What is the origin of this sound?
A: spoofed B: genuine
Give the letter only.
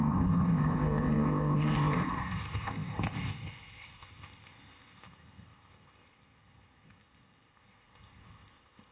A